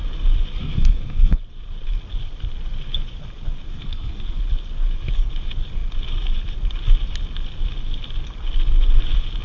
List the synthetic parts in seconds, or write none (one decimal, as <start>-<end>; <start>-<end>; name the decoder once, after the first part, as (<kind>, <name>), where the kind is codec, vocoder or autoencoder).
0.6-1.4 (codec, SNAC); 3.7-4.4